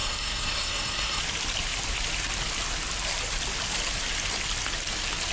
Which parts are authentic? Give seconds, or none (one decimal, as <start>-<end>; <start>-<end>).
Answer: 1.2-5.3

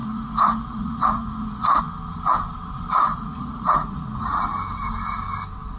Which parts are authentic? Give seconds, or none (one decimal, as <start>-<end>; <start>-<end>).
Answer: 1.8-3.1; 4.4-5.8

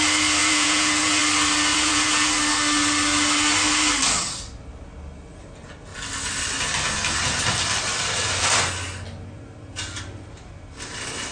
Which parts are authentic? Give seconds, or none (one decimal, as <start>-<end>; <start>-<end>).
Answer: 0.0-0.4; 1.2-1.7; 2.3-11.3